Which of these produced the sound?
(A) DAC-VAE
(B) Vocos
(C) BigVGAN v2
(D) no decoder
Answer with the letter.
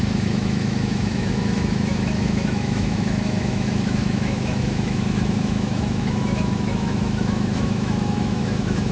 A